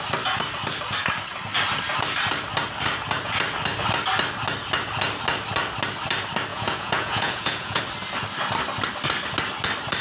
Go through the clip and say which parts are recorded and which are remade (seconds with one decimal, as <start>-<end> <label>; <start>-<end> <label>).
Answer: 0.0-6.5 recorded; 6.5-7.8 remade; 7.8-10.0 recorded